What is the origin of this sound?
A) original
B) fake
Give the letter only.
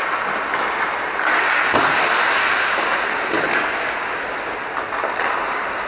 A